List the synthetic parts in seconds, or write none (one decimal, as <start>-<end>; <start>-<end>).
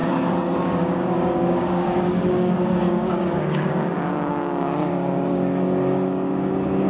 0.0-6.9